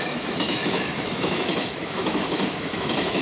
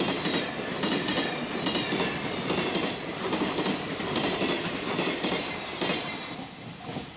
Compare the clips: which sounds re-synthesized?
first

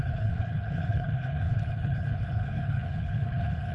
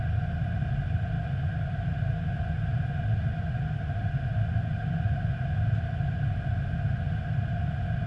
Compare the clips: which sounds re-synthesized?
first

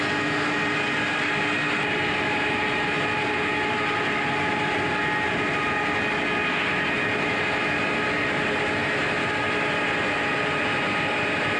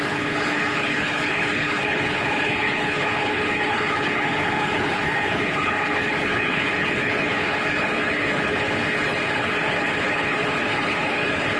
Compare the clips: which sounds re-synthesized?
second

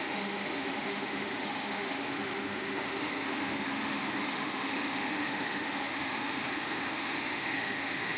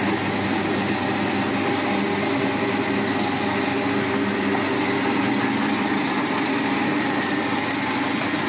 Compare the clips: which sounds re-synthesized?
first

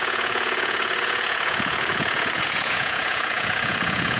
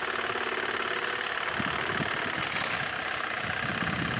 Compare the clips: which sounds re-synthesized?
first